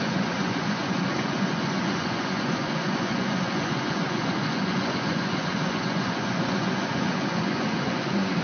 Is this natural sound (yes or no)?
no